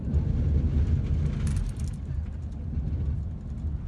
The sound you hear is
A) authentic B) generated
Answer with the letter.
A